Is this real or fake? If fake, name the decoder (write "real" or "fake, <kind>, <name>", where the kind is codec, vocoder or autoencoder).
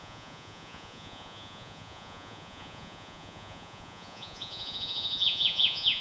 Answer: fake, vocoder, Vocos